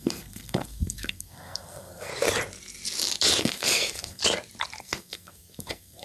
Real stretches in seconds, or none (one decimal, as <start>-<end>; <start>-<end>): 2.1-3.4; 4.2-4.8